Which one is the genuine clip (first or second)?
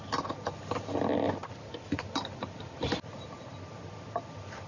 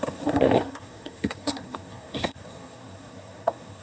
first